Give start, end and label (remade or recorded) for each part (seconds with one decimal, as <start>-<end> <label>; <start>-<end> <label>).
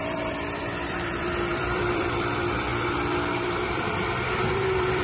0.0-5.0 remade